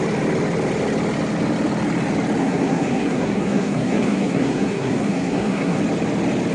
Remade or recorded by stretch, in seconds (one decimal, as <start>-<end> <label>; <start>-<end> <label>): 0.0-2.4 recorded; 2.4-5.8 remade; 5.8-6.5 recorded